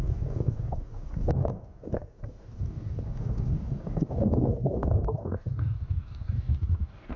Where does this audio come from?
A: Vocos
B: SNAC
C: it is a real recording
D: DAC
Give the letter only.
D